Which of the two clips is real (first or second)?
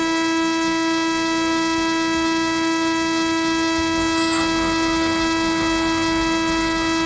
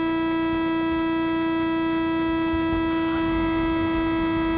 second